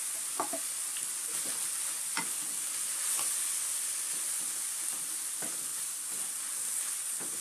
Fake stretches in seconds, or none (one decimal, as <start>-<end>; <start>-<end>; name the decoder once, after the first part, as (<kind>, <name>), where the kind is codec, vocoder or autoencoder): 5.7-7.4 (vocoder, BigVGAN v2)